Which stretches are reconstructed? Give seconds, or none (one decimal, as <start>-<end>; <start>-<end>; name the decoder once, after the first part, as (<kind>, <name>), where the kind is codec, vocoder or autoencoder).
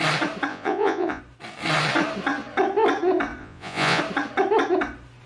0.5-1.2 (vocoder, Vocos); 3.4-4.0